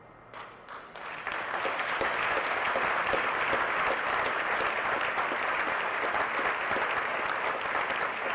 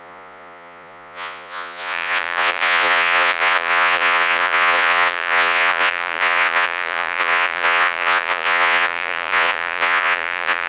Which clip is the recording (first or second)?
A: first